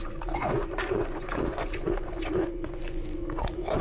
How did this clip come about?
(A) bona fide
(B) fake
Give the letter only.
B